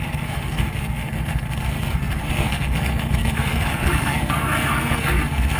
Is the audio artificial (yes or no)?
yes